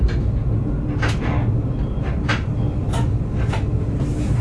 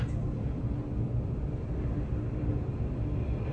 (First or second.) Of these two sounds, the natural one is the first